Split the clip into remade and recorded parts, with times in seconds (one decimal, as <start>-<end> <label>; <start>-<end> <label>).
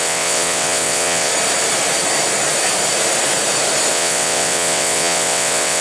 0.0-1.3 remade; 1.3-3.9 recorded; 3.9-5.8 remade